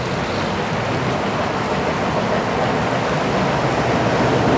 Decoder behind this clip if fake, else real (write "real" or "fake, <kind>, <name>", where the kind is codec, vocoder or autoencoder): real